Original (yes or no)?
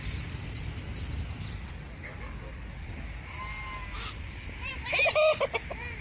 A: yes